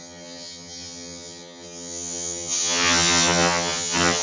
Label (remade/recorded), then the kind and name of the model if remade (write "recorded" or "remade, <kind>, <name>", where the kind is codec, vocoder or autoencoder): remade, vocoder, HiFi-GAN